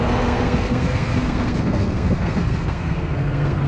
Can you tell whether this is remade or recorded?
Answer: remade